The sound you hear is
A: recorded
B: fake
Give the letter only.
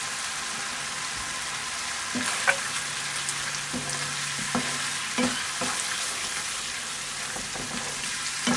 A